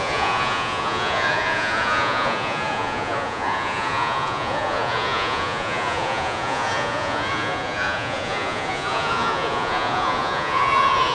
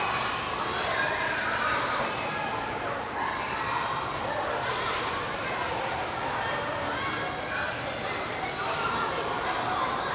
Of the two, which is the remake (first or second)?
first